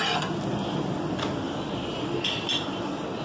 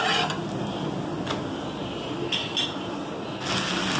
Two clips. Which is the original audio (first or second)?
second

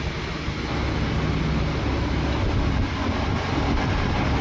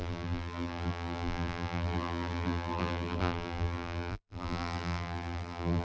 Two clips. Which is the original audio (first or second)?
first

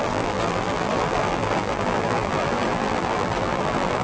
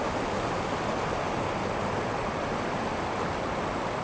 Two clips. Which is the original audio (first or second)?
second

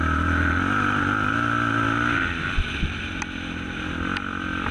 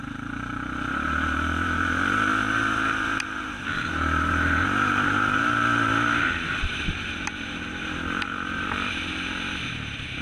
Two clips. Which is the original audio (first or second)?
first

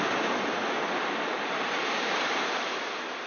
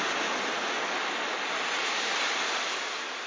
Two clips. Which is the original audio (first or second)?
second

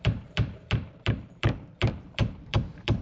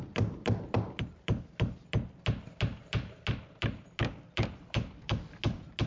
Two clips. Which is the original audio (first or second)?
second